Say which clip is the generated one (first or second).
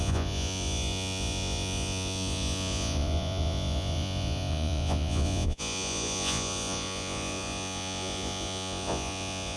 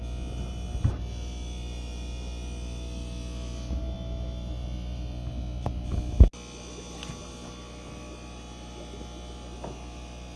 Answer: first